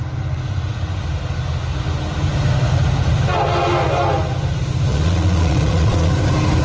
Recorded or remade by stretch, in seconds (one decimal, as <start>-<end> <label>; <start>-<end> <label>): 0.0-4.9 recorded; 4.9-6.1 remade; 6.1-6.6 recorded